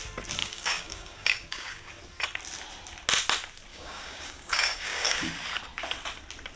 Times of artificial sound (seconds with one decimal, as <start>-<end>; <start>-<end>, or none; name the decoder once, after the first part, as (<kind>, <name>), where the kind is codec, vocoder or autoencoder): 0.4-1.9 (codec, DAC); 3.7-5.3